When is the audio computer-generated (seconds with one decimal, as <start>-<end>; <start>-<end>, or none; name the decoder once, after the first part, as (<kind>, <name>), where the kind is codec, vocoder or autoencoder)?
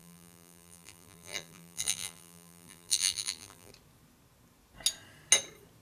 0.0-3.7 (vocoder, BigVGAN v2)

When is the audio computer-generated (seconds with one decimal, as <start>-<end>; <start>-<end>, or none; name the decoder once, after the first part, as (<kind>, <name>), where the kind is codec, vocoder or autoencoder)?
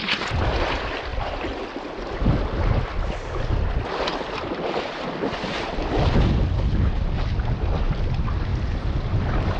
none